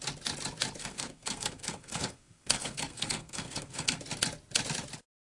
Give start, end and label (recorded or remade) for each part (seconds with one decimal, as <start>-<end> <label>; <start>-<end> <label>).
0.0-0.8 recorded; 0.8-4.0 remade; 4.0-5.3 recorded